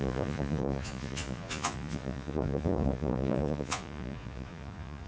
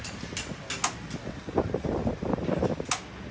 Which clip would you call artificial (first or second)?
first